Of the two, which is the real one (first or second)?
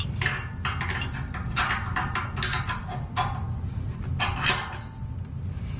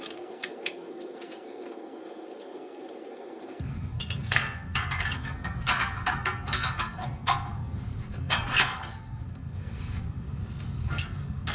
first